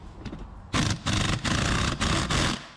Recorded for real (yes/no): yes